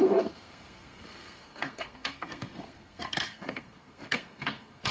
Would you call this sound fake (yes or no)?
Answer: yes